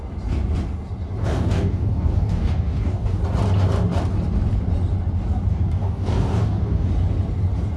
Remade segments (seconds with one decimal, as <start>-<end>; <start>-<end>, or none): 1.2-3.2; 5.5-6.9